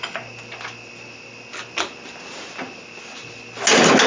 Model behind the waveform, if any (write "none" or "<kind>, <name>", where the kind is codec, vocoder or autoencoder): none